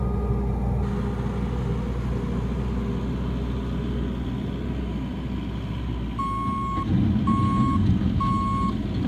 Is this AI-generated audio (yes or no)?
no